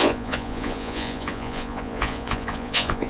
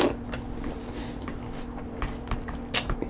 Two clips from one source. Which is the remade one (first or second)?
first